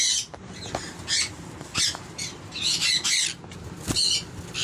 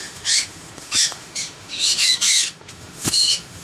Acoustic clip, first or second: first